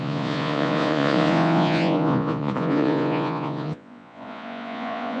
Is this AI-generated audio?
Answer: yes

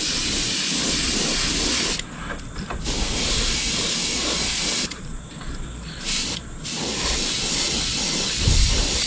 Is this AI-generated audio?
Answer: no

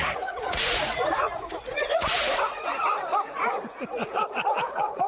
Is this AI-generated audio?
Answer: yes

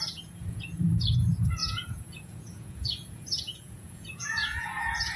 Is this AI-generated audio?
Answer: yes